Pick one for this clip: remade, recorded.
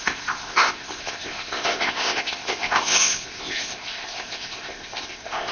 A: remade